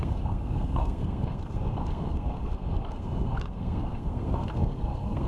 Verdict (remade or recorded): remade